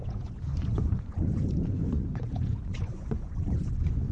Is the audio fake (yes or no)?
yes